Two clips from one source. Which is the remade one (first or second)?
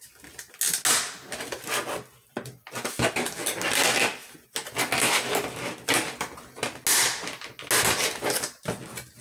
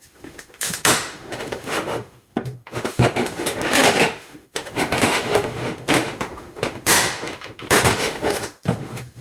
second